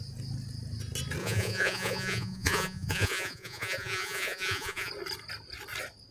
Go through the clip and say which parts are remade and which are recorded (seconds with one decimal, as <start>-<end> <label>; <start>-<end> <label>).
0.0-1.2 recorded; 1.2-4.9 remade; 4.9-6.1 recorded